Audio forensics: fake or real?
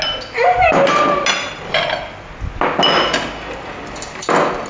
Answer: real